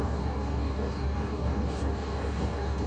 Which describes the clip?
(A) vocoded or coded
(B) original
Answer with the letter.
A